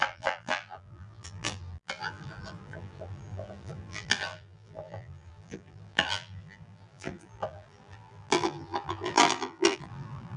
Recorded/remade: remade